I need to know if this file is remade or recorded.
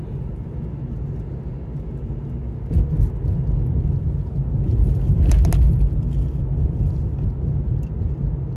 recorded